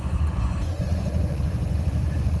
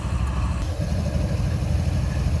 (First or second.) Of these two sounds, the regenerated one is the first